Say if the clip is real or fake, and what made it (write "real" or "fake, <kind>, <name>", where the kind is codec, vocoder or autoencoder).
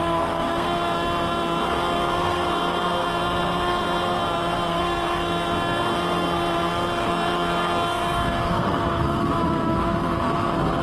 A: fake, codec, SNAC